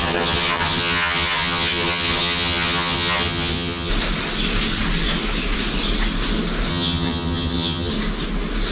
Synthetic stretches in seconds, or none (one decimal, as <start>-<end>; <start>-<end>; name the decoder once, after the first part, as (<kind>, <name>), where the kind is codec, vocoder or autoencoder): 0.0-3.9 (vocoder, HiFi-GAN); 6.7-7.9